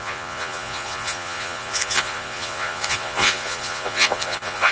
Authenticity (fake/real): fake